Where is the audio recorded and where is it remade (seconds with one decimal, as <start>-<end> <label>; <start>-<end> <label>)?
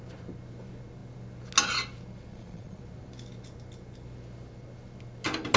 0.0-2.3 recorded; 2.3-2.8 remade; 2.8-5.6 recorded